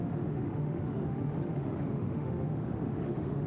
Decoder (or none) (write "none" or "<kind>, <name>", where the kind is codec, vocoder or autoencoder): autoencoder, DAC-VAE